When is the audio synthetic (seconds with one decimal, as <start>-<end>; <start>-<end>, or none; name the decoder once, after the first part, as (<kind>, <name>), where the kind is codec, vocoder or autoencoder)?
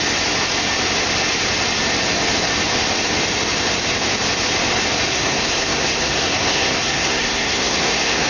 5.1-8.3 (codec, SNAC)